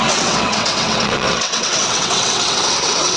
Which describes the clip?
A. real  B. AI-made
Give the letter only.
B